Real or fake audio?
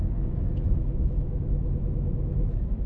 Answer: fake